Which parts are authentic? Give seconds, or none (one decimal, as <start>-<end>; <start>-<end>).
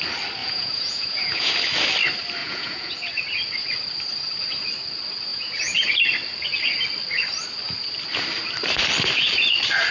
0.0-0.4; 1.5-2.4; 2.9-5.3; 5.9-9.9